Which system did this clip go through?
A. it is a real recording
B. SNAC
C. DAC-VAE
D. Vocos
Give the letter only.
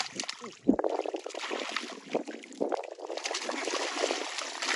A